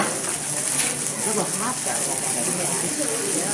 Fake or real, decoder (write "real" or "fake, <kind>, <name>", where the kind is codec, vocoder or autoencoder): real